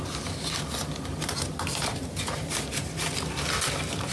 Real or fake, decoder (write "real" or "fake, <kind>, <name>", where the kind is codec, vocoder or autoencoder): real